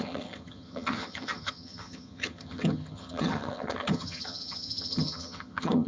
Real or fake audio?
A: fake